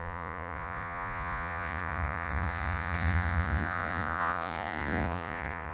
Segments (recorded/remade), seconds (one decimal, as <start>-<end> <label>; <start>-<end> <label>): 0.0-5.7 remade